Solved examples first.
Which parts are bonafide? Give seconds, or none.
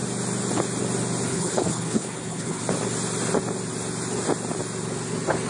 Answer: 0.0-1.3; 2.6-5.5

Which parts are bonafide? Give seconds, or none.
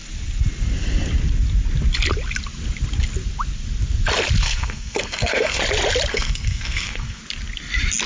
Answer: 0.0-4.4; 5.6-6.1; 7.2-8.1